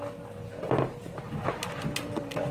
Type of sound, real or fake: real